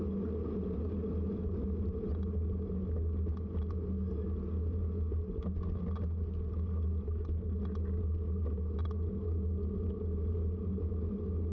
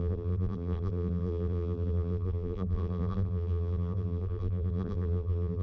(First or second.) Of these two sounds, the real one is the first